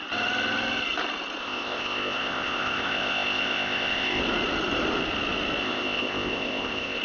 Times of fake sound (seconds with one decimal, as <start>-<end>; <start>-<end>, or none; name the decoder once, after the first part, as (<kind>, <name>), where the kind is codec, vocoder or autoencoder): 1.4-4.2 (codec, ZipCodec); 5.6-7.0

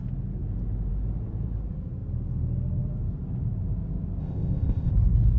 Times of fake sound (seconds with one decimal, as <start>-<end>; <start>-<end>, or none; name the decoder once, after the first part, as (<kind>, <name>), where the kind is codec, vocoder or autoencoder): 4.2-4.9 (codec, ZipCodec)

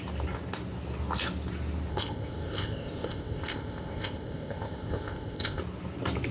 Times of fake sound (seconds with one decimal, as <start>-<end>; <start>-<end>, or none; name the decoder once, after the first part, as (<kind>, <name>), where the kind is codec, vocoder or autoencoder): 1.9-5.6 (codec, ZipCodec)

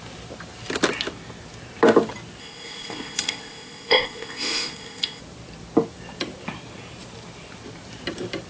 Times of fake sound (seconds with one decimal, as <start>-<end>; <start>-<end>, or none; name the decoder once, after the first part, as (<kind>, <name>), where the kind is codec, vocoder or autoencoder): 2.4-5.2 (codec, ZipCodec)

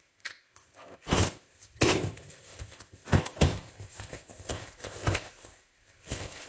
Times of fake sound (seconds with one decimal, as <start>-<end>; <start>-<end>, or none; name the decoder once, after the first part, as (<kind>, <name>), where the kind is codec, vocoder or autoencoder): 0.0-6.5 (codec, ZipCodec)

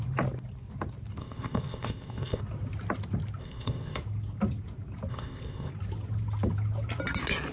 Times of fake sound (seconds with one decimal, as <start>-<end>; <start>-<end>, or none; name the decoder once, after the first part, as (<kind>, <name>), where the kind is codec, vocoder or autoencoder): 1.2-2.4 (codec, ZipCodec); 3.4-4.0; 5.1-5.7

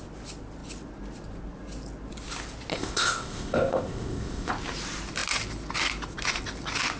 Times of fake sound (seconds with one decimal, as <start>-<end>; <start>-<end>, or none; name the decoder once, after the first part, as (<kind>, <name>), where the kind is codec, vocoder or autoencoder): 2.7-4.5 (codec, ZipCodec)

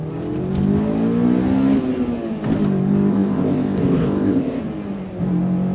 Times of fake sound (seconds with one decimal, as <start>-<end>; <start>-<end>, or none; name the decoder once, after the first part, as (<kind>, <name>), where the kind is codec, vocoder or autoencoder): 3.1-4.6 (codec, ZipCodec)